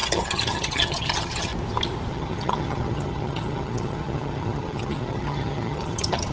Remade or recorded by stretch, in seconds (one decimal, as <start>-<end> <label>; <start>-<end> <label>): 0.0-1.5 remade; 1.5-2.1 recorded; 2.1-6.3 remade